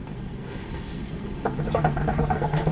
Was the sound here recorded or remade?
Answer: remade